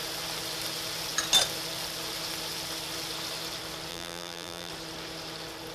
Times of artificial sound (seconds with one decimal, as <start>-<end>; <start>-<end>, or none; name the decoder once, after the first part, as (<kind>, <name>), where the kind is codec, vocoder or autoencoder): 3.9-4.7 (vocoder, BigVGAN v2)